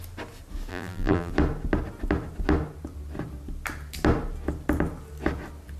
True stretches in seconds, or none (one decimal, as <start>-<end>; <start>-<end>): 0.0-0.7; 1.3-5.8